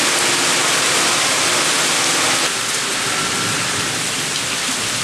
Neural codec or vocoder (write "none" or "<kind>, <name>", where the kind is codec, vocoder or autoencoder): none